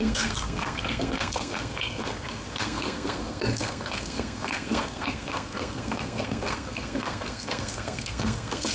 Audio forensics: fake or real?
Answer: fake